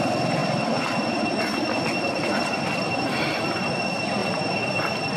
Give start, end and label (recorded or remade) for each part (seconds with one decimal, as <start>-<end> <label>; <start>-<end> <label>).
0.0-0.4 recorded; 0.4-1.8 remade; 1.8-2.3 recorded; 2.3-3.7 remade; 3.7-5.2 recorded